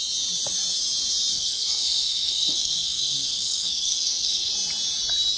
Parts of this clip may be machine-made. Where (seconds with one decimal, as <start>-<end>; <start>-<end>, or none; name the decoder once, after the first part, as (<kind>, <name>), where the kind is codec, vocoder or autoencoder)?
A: 1.3-4.5 (codec, SNAC)